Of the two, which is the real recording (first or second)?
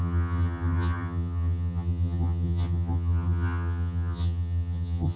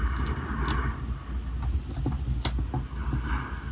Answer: second